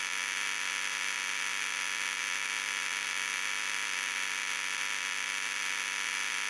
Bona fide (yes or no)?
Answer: no